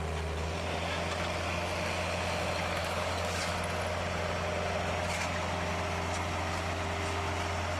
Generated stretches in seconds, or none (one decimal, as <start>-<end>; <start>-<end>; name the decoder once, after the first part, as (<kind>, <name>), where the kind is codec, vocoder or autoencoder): 2.8-3.5 (codec, DAC)